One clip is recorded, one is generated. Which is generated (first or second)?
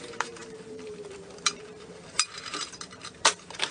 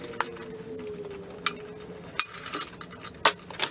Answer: first